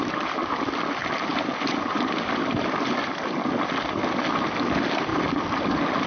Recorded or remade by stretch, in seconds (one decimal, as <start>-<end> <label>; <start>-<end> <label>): 0.0-5.1 recorded; 5.1-6.1 remade